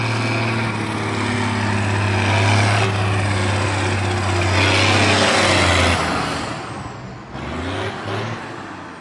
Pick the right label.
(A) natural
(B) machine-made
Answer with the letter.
A